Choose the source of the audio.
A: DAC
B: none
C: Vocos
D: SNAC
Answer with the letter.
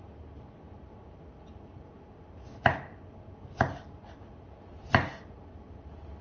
B